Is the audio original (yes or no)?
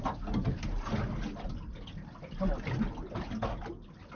yes